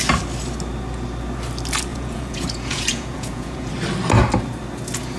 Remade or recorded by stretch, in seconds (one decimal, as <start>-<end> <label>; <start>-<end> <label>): 0.0-1.9 recorded; 1.9-3.7 remade; 3.7-5.2 recorded